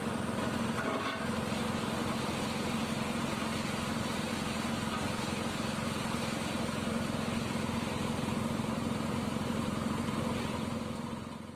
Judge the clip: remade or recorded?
recorded